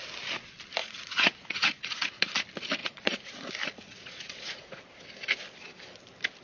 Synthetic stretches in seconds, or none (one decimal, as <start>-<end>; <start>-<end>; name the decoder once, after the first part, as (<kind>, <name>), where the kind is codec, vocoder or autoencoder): 0.8-2.3 (vocoder, Vocos); 2.8-3.5; 3.9-4.8